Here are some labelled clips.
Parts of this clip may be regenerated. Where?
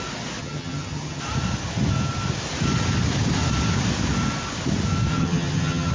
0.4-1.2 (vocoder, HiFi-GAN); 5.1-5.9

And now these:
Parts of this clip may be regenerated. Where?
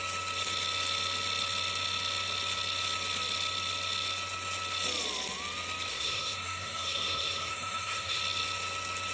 5.9-8.2 (codec, SNAC)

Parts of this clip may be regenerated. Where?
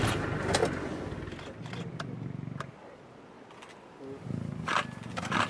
none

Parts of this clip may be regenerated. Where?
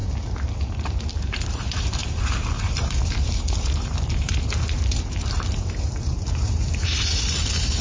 1.0-7.8 (vocoder, BigVGAN v2)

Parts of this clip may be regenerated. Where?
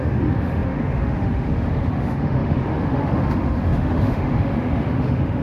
0.0-5.4 (autoencoder, DAC-VAE)